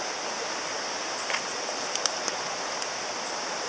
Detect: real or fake real